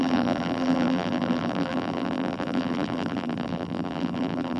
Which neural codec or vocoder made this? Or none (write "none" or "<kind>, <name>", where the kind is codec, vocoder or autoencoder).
vocoder, BigVGAN v2